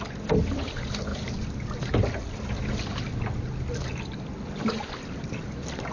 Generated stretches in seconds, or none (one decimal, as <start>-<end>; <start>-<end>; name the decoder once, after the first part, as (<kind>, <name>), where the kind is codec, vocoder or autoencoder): none